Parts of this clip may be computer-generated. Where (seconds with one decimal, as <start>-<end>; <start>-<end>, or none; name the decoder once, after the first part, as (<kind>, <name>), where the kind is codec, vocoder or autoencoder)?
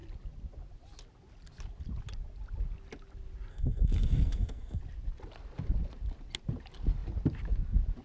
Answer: 3.5-4.8 (codec, SNAC)